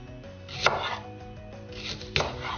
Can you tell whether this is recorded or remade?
recorded